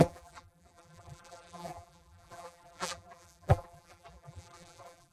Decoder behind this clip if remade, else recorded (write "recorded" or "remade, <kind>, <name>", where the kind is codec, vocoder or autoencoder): remade, vocoder, BigVGAN v2